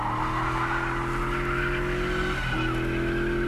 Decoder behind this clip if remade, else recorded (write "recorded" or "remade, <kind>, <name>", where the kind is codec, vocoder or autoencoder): recorded